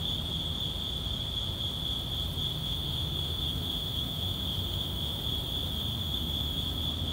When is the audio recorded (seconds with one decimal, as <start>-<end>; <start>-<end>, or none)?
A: 0.0-2.6; 5.2-5.9; 6.5-7.1